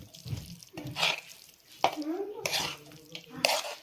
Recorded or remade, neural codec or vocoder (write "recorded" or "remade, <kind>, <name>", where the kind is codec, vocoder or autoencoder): remade, vocoder, BigVGAN v2